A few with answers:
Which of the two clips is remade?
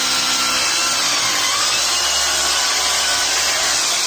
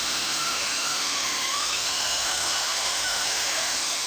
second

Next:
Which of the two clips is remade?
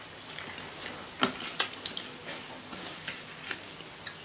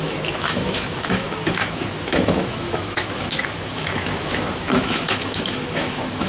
second